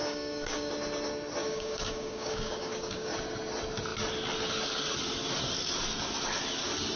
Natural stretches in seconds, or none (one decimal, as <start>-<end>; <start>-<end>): 0.7-1.4; 3.1-7.0